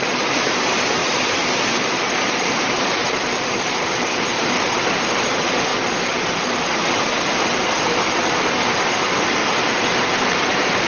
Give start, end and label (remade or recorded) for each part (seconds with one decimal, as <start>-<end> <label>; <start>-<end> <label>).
0.0-9.4 remade; 9.4-10.1 recorded; 10.1-10.9 remade